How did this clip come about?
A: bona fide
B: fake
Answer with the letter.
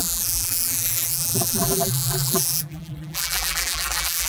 B